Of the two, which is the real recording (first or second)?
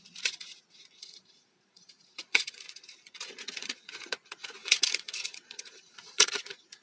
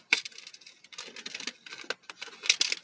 second